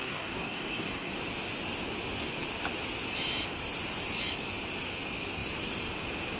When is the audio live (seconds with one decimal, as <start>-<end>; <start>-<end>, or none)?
1.1-6.4